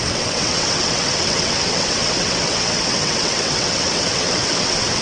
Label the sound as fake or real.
fake